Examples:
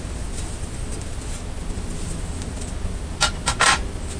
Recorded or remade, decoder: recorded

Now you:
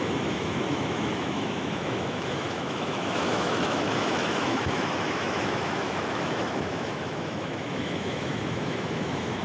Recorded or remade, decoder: remade, autoencoder, DAC-VAE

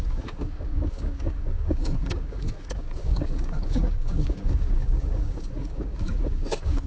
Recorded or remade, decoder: remade, codec, DAC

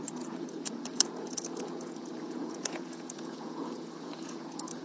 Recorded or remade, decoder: remade, vocoder, Vocos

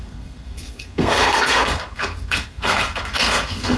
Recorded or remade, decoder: remade, codec, SNAC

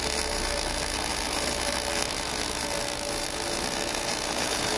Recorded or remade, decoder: recorded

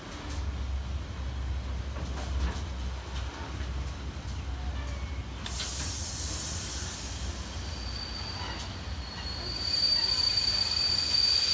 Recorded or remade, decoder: recorded